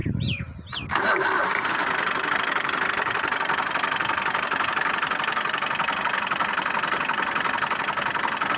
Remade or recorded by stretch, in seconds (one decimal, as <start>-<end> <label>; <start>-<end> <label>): 0.0-8.6 recorded